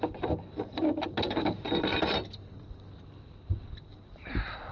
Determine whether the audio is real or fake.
real